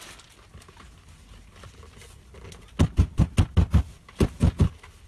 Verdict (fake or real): real